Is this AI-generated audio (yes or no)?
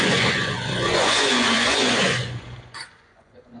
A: yes